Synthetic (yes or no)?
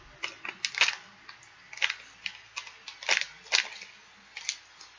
no